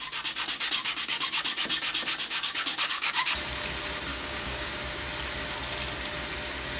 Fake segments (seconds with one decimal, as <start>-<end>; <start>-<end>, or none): 0.8-1.4; 2.4-3.4; 4.1-4.7